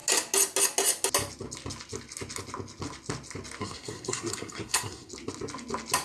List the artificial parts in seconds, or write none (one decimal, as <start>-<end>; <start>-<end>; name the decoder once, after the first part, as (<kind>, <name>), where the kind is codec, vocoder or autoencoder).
3.6-5.1 (codec, SNAC)